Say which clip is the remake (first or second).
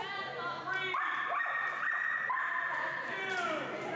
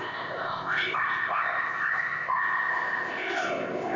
second